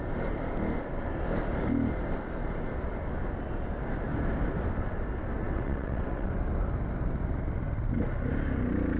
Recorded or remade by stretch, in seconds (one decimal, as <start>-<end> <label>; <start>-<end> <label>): 0.0-5.4 recorded; 5.4-6.3 remade; 6.3-9.0 recorded